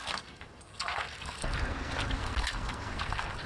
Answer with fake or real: fake